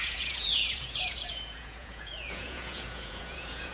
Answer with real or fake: fake